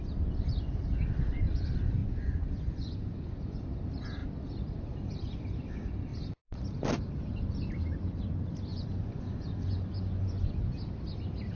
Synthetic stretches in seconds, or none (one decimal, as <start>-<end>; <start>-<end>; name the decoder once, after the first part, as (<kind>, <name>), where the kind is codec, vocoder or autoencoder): 2.0-3.6 (vocoder, Vocos); 8.7-10.6